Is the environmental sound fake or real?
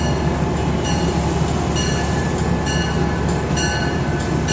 real